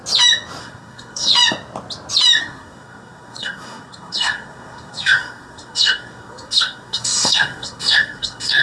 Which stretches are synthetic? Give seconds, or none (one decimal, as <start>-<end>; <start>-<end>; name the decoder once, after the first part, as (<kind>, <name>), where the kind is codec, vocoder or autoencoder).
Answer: 0.6-1.3 (codec, SNAC); 2.4-8.6